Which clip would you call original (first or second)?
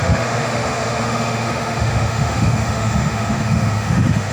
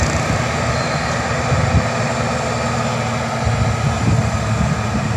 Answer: second